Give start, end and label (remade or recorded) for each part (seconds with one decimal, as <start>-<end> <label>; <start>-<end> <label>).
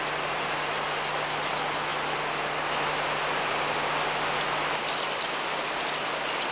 0.0-6.5 recorded